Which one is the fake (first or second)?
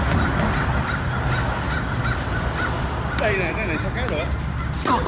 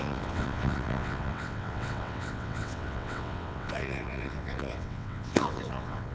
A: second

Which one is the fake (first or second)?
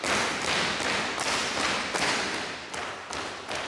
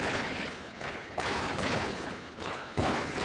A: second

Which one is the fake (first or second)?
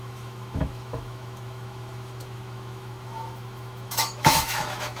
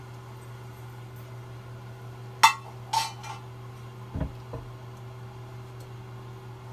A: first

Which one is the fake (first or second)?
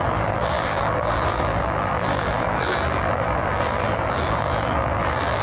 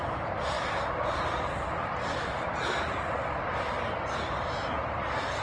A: first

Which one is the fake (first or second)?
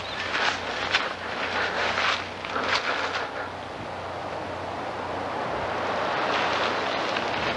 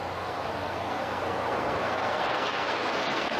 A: second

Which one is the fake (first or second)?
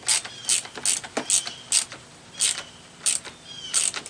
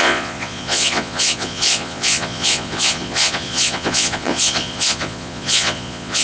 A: second